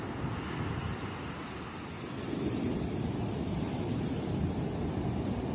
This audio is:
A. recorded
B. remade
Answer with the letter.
A